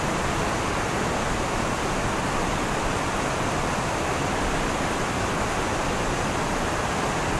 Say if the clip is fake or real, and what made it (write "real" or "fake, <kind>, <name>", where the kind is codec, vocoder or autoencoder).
real